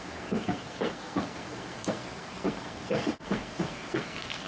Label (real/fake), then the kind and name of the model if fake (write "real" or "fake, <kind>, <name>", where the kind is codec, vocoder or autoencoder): fake, codec, SNAC